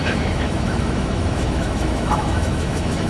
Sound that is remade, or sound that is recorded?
remade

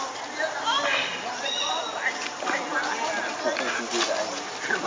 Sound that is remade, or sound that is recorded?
recorded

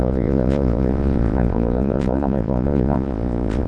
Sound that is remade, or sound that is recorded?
remade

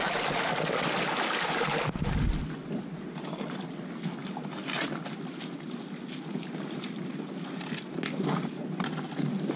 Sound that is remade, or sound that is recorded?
recorded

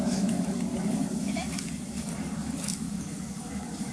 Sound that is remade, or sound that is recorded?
remade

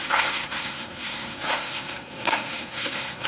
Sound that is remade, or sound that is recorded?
remade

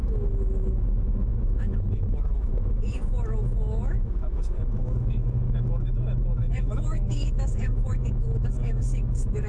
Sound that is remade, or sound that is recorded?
remade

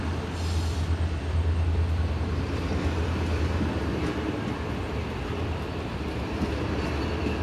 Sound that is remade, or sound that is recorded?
recorded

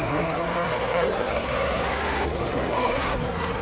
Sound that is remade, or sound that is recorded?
remade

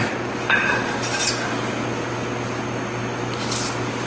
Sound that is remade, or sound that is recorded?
recorded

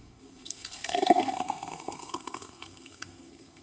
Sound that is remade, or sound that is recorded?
remade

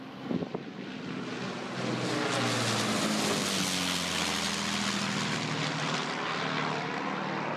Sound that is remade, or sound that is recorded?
recorded